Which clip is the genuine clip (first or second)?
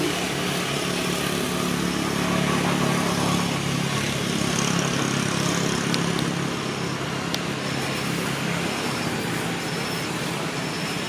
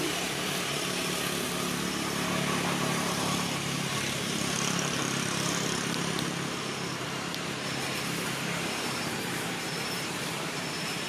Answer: first